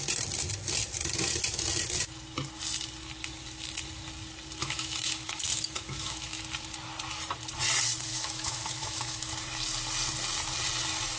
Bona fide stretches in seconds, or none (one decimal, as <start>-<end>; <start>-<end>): 0.0-4.6; 6.4-8.1; 9.3-11.2